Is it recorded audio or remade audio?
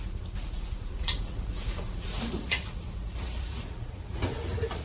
remade